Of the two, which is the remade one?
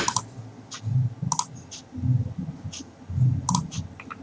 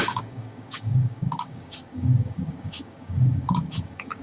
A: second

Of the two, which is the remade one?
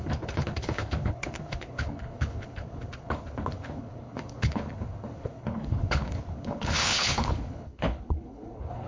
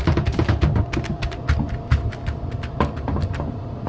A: first